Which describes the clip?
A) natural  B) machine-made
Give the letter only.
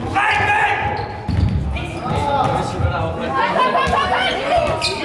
A